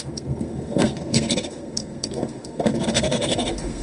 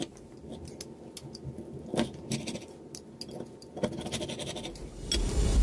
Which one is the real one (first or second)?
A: second